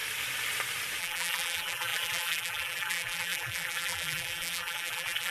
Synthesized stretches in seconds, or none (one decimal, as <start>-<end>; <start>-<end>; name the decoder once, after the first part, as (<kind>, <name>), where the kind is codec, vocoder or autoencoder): 1.0-5.3 (vocoder, BigVGAN v2)